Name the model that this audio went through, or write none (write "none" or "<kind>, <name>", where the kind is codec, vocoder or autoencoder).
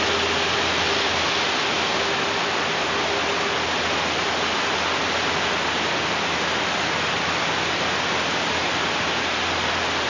none